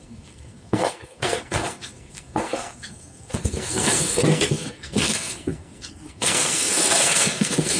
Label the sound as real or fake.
fake